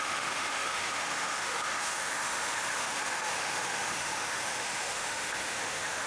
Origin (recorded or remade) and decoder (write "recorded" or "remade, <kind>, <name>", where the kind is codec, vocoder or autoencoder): remade, autoencoder, DAC-VAE